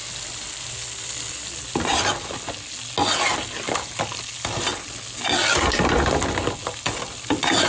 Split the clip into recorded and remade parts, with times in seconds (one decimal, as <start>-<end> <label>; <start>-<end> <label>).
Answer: 0.0-7.7 recorded

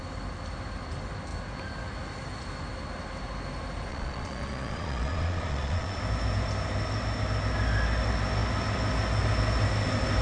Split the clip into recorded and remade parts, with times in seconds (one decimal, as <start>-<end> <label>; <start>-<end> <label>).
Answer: 0.0-3.9 recorded; 3.9-6.0 remade; 6.0-10.2 recorded

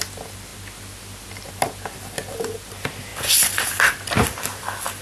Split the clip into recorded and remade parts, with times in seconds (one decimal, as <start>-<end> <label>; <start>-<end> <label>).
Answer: 0.0-5.0 recorded

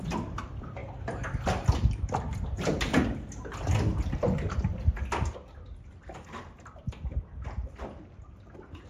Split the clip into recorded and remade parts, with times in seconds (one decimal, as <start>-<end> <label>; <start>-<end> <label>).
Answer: 0.0-8.9 recorded

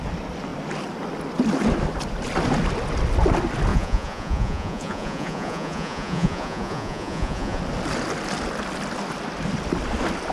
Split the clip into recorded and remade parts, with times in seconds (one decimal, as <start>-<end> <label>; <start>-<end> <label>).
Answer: 0.0-3.7 recorded; 3.7-7.6 remade; 7.6-10.3 recorded

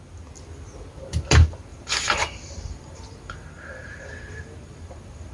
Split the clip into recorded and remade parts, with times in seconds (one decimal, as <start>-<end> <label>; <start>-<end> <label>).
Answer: 0.0-1.7 recorded; 1.7-5.3 remade